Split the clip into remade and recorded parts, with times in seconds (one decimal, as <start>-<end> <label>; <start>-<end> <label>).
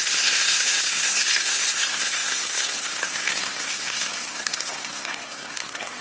0.0-6.0 remade